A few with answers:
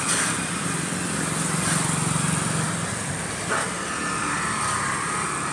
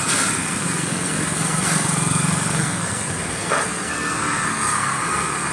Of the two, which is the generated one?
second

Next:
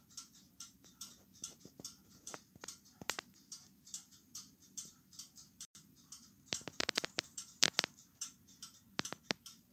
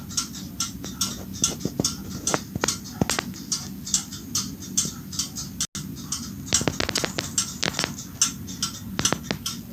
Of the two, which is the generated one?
first